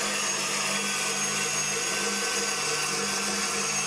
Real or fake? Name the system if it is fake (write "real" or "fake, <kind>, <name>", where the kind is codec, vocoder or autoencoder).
real